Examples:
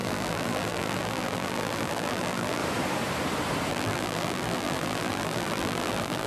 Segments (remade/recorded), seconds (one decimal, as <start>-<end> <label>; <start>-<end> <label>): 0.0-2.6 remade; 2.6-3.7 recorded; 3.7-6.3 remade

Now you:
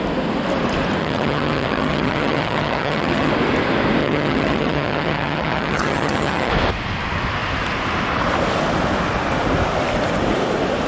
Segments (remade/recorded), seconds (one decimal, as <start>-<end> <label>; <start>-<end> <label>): 0.0-1.0 recorded; 1.0-3.3 remade; 3.3-4.0 recorded; 4.0-6.5 remade; 6.5-10.9 recorded

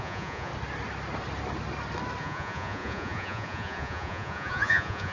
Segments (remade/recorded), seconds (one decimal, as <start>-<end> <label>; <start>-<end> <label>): 0.0-0.5 remade; 0.5-2.2 recorded; 2.2-5.1 remade